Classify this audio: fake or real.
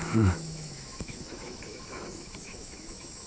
fake